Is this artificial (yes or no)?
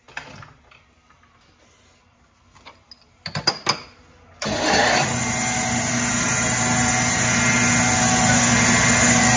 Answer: no